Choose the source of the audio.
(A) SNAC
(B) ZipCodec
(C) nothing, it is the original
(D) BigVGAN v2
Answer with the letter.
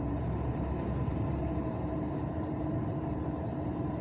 D